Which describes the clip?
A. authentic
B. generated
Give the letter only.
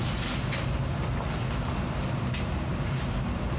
A